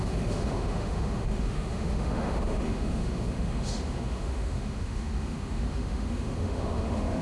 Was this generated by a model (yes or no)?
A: yes